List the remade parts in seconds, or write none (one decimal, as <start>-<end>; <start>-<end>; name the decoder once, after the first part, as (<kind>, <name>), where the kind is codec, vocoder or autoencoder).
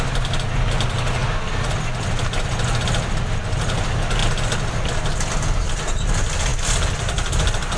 none